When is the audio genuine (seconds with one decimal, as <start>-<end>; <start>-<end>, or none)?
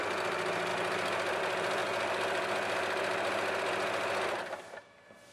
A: 0.0-5.3